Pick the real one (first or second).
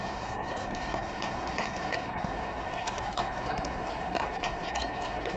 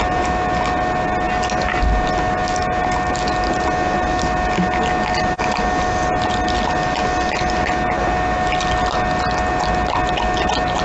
second